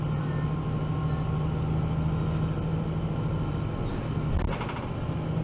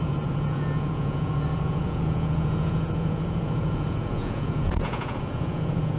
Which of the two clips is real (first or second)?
first